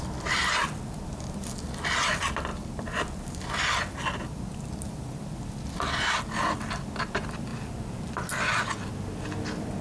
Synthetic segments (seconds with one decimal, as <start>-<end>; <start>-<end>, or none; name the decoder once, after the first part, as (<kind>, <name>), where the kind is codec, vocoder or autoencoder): none